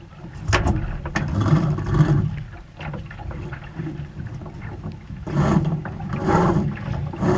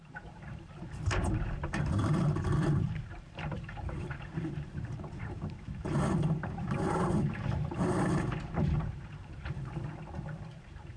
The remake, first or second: second